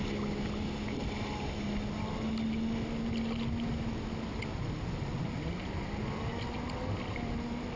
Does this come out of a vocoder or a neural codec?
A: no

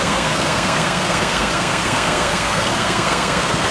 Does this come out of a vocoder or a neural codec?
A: yes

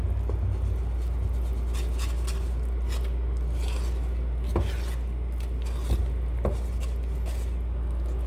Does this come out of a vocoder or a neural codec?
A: no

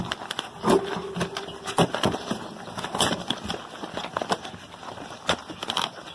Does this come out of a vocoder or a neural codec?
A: no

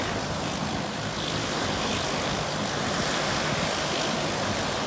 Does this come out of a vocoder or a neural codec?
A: yes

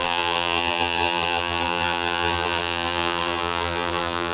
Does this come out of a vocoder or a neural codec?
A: yes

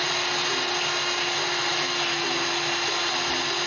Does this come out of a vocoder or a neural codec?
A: no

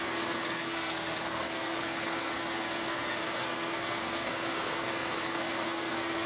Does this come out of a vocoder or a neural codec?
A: yes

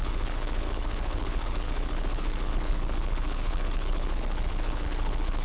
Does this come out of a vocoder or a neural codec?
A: yes